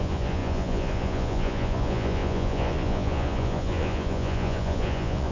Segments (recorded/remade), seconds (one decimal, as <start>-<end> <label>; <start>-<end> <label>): 0.0-5.3 remade

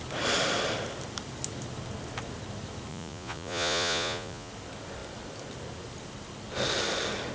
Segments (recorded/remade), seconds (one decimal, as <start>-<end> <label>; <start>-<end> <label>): 0.0-2.9 recorded; 2.9-4.5 remade; 4.5-7.3 recorded

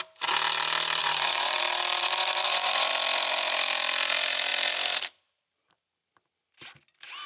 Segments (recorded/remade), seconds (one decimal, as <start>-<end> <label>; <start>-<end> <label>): 0.0-1.0 recorded; 1.0-1.6 remade; 1.6-2.0 recorded; 2.0-2.9 remade; 2.9-7.3 recorded

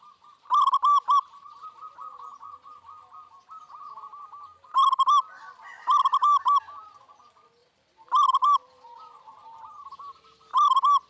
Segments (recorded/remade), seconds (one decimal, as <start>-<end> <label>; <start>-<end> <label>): 0.0-11.1 recorded

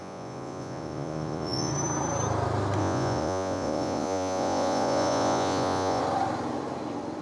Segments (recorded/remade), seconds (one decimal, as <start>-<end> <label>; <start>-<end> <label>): 0.0-1.7 remade; 1.7-2.8 recorded; 2.8-6.0 remade; 6.0-7.2 recorded

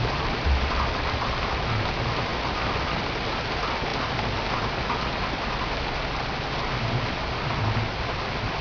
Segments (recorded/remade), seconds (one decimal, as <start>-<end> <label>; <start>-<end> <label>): 0.0-8.6 recorded